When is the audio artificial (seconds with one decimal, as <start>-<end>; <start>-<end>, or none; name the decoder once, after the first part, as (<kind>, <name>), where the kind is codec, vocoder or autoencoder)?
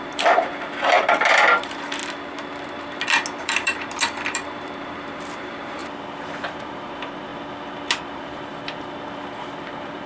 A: 0.0-2.0 (vocoder, BigVGAN v2); 3.4-5.8; 6.4-7.3; 8.0-8.5; 9.3-10.1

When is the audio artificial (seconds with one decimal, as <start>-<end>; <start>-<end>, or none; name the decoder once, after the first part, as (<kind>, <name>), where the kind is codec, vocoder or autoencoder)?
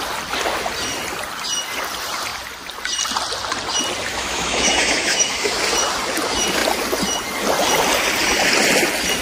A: 4.1-5.6 (autoencoder, DAC-VAE)